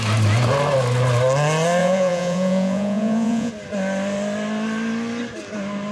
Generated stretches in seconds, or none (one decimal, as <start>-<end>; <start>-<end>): 1.8-3.5